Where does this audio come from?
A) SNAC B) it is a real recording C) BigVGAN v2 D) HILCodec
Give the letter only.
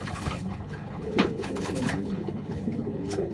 D